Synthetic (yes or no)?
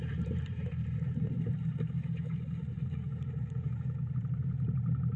yes